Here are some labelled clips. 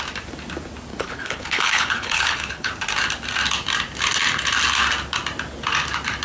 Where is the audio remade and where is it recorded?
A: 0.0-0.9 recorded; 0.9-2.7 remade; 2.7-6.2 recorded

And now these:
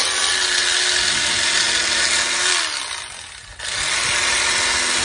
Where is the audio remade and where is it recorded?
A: 0.0-5.0 recorded

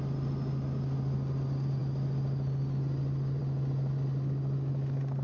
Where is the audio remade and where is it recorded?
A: 0.0-5.2 recorded

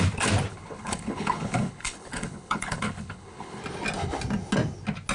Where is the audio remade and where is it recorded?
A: 0.0-0.5 recorded; 0.5-3.6 remade; 3.6-5.1 recorded

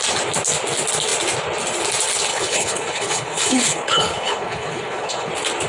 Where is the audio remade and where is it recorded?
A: 0.0-2.3 recorded; 2.3-5.3 remade; 5.3-5.7 recorded

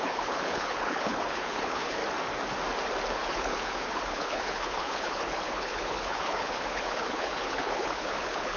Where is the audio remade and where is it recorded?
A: 0.0-2.0 remade; 2.0-3.1 recorded; 3.1-8.6 remade